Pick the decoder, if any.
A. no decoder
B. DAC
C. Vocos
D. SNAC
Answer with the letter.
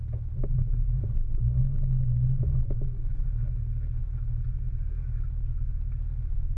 A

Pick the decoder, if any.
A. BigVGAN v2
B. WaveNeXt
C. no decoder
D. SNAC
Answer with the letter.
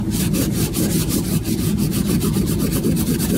C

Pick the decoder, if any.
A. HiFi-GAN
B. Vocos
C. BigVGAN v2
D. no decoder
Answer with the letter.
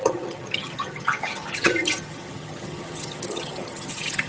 A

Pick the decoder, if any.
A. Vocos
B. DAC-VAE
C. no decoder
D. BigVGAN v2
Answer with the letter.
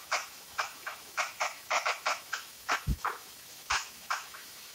B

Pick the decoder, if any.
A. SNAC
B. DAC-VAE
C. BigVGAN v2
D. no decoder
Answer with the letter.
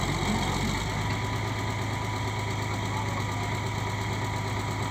D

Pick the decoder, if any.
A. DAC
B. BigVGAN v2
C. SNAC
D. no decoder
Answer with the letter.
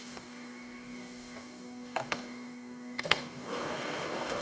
A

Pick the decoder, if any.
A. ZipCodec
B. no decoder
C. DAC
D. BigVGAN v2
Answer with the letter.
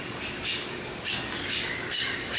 C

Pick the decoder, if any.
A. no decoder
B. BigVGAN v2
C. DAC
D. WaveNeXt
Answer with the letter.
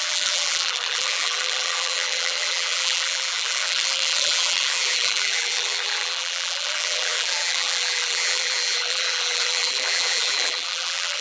B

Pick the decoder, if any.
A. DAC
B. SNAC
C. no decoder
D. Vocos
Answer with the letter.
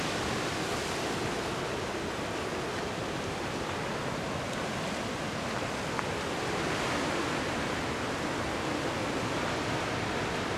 C